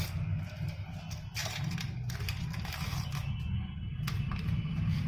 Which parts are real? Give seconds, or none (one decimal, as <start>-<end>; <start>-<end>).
0.0-3.9